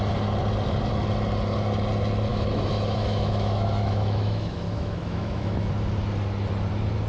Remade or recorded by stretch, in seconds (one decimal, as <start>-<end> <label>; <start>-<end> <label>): 0.0-2.3 recorded; 2.3-5.7 remade; 5.7-7.1 recorded